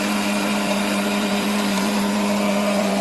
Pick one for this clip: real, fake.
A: fake